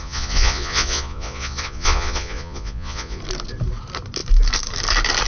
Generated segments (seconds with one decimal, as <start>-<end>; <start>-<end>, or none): 0.0-3.2